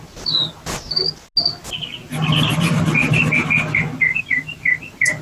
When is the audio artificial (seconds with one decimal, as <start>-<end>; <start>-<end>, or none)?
none